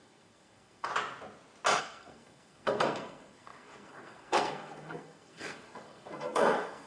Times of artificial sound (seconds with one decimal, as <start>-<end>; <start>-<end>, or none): 0.0-0.9; 1.8-6.9